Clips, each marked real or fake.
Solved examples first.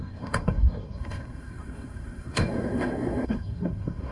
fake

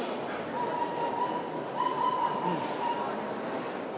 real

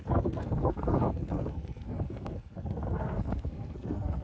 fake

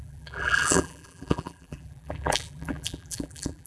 fake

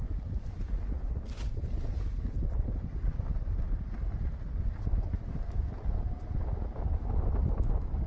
real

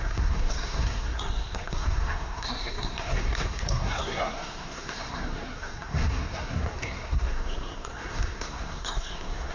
fake